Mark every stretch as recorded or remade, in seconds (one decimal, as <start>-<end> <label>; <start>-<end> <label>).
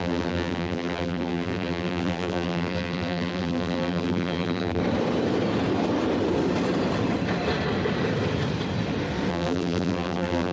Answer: 0.0-4.8 remade; 4.8-9.3 recorded; 9.3-10.5 remade